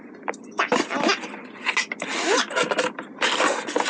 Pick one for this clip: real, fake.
real